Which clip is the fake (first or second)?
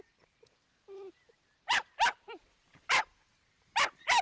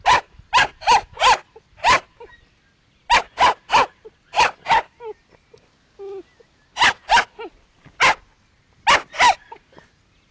first